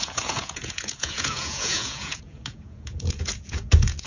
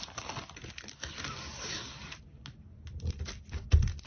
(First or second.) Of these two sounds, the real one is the second